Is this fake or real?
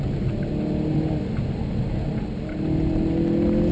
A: real